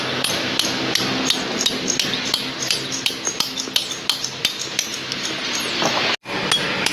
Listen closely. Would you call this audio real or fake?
real